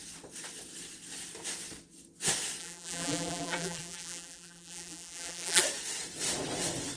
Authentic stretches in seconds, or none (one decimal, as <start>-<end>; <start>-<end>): 0.0-2.6; 5.6-7.0